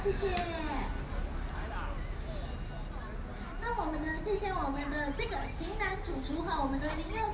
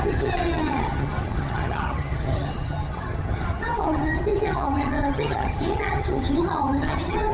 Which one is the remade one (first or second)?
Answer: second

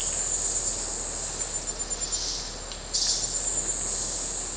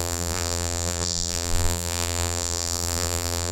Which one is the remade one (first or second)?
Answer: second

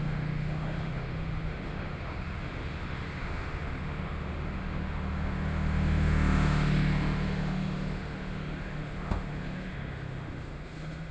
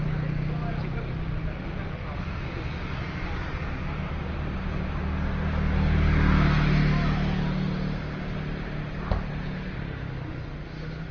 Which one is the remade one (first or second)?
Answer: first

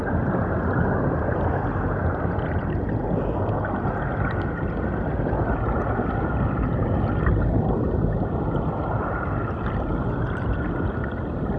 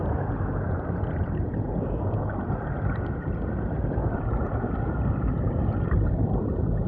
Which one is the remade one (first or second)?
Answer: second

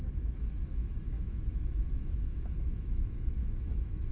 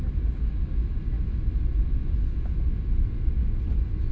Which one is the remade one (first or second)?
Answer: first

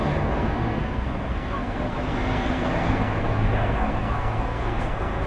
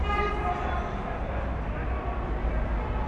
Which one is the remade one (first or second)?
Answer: first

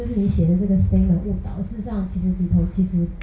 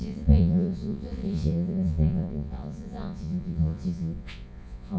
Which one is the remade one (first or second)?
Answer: second